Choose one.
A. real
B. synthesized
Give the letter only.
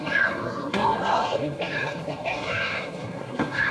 B